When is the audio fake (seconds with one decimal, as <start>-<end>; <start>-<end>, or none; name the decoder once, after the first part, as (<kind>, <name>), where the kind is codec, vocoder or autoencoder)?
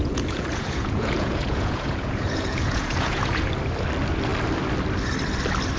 0.0-3.5 (vocoder, Vocos)